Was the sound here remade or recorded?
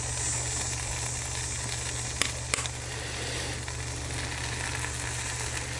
recorded